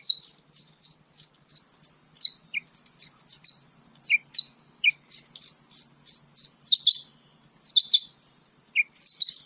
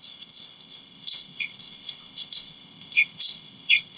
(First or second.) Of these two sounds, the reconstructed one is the second